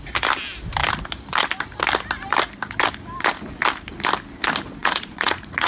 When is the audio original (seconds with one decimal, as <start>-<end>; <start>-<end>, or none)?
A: 0.0-4.8

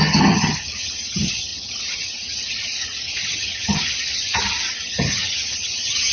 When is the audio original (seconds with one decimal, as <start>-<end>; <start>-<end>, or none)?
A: none

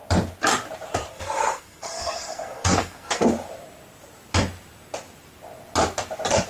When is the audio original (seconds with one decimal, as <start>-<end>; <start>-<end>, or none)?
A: 0.0-1.1; 3.2-6.5

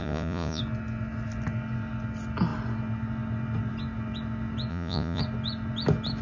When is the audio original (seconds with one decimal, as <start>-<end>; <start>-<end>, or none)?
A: 0.6-4.7; 5.2-6.2

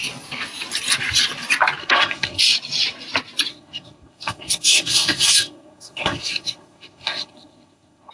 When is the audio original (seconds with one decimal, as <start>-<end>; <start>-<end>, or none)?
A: 0.0-1.8; 2.4-3.5

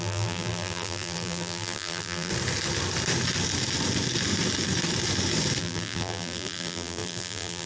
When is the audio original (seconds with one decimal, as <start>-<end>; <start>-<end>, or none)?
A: 2.3-5.6

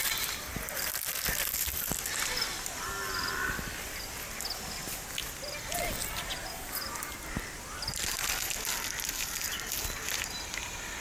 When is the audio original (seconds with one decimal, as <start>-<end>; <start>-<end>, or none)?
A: 0.0-11.0

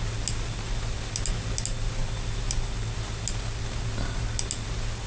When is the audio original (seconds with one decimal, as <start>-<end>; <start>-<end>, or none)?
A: 0.0-5.1